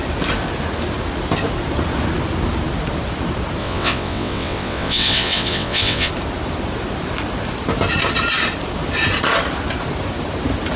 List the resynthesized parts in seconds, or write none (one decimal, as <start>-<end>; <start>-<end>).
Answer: 3.6-6.1